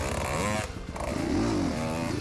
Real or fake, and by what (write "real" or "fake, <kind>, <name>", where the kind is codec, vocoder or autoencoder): real